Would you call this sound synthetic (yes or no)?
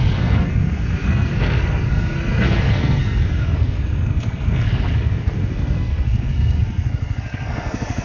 yes